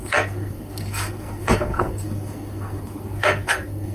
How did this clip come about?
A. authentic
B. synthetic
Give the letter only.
B